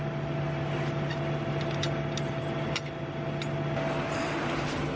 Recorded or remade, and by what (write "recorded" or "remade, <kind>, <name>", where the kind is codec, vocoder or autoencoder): recorded